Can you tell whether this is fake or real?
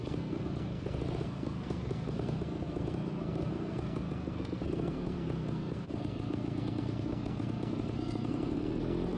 fake